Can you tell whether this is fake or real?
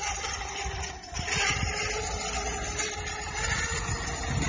real